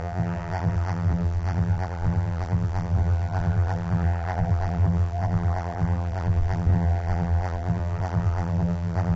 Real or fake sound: fake